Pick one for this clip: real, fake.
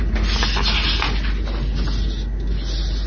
real